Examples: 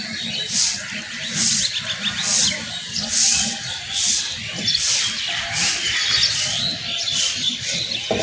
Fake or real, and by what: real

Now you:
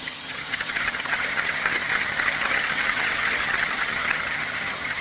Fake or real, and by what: fake, vocoder, HiFi-GAN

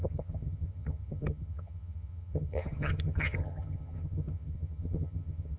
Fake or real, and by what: fake, vocoder, HiFi-GAN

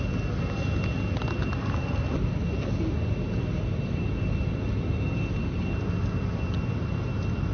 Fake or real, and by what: real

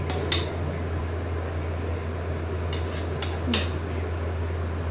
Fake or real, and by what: real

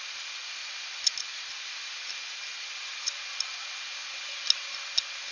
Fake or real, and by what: real